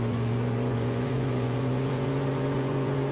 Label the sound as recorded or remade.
remade